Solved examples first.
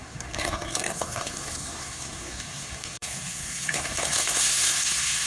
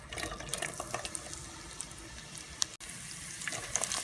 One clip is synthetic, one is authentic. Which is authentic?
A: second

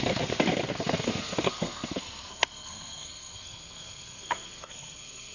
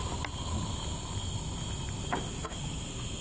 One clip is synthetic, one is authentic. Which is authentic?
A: second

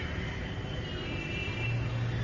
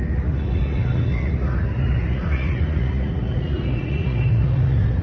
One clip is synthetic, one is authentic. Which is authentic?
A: first